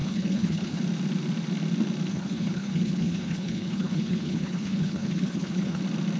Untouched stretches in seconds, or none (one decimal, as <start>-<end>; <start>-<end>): 0.8-2.1; 5.8-6.2